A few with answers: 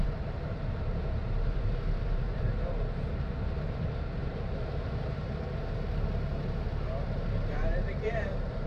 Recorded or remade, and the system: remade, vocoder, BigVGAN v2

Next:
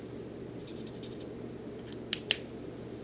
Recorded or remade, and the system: recorded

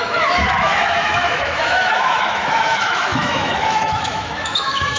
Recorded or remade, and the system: remade, autoencoder, DAC-VAE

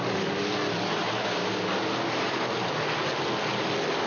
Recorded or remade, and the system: recorded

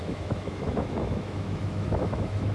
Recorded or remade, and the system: remade, autoencoder, DAC-VAE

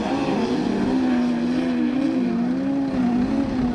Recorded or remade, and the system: recorded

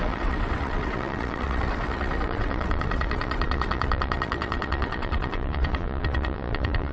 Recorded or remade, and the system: remade, vocoder, WaveNeXt